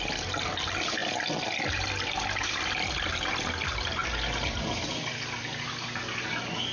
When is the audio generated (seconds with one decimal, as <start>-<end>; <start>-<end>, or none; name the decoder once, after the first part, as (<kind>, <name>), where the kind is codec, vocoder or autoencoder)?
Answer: none